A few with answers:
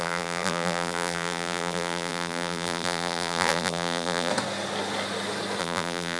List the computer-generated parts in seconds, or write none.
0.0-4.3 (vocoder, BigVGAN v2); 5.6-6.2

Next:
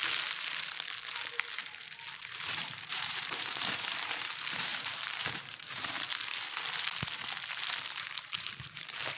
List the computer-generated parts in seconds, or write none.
2.2-6.1 (vocoder, BigVGAN v2); 7.9-9.2

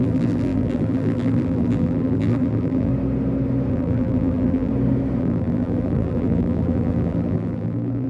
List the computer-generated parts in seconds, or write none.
0.0-2.9 (vocoder, BigVGAN v2); 3.7-4.7; 5.2-8.1

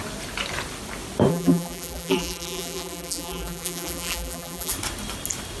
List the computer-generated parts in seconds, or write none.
1.3-4.7 (vocoder, BigVGAN v2)